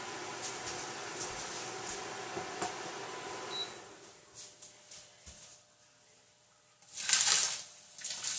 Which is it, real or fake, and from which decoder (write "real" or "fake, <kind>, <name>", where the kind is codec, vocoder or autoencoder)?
real